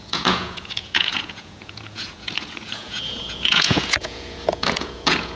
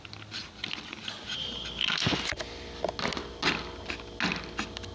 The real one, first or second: second